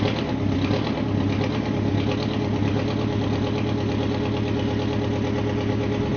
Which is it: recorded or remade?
recorded